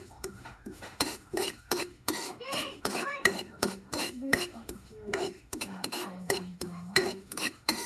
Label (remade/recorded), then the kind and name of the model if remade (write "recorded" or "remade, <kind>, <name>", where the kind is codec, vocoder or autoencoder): remade, autoencoder, DAC-VAE